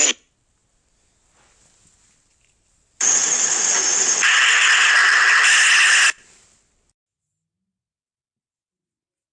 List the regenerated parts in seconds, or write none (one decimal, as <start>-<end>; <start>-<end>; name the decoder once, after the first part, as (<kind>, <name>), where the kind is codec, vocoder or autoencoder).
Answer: none